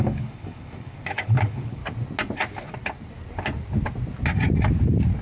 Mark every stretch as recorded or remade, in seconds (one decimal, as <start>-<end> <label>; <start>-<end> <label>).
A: 0.0-1.8 remade; 1.8-5.2 recorded